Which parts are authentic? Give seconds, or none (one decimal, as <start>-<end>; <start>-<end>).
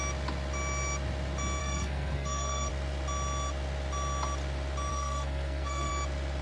0.0-1.6; 2.7-4.9; 5.9-6.4